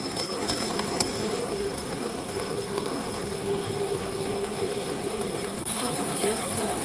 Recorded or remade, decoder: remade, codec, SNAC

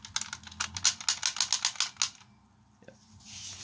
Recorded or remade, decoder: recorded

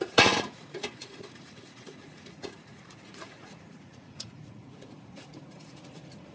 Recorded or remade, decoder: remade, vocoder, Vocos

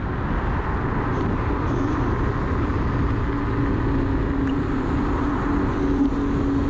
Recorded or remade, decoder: recorded